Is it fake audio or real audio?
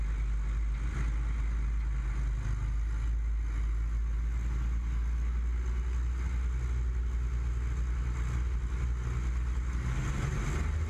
real